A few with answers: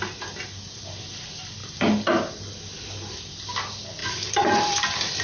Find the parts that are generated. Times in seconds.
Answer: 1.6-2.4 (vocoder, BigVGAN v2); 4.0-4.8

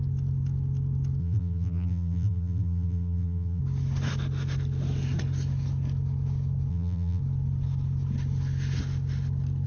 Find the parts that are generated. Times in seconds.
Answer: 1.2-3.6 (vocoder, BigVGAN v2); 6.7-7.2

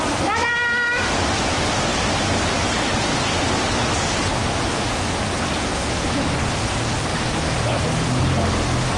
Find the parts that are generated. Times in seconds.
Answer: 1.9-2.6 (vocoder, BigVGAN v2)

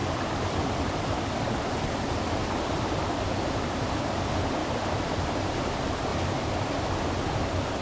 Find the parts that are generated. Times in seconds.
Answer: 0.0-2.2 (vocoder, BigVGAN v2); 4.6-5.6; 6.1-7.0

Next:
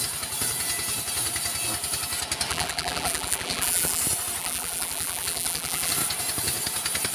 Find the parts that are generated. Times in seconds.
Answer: 2.5-4.0 (vocoder, BigVGAN v2); 4.4-5.9

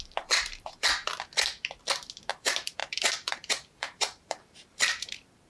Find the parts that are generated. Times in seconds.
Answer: 0.0-1.1 (vocoder, BigVGAN v2); 2.3-5.5

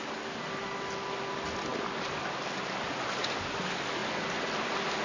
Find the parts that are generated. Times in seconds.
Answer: none

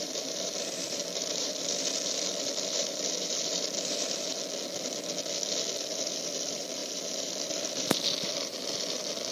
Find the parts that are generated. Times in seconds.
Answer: 0.0-4.3 (vocoder, BigVGAN v2); 5.8-9.3